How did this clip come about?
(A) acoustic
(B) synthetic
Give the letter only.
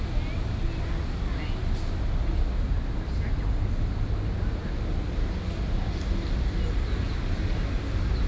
A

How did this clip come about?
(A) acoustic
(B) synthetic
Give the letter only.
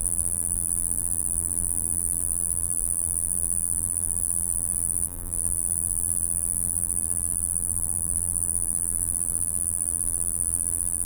B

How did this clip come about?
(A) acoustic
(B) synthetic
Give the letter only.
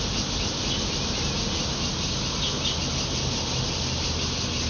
A